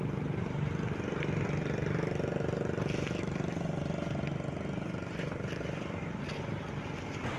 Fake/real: real